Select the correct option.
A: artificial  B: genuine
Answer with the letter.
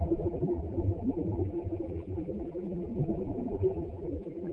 A